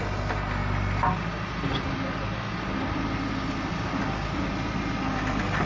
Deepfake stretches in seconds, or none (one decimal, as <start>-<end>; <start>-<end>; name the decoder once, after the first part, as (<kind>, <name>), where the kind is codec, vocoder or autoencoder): none